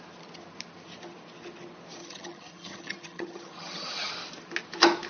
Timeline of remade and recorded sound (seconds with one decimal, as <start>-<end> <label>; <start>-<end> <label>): 0.0-2.0 recorded; 2.0-4.1 remade; 4.1-5.1 recorded